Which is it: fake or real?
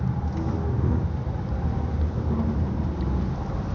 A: real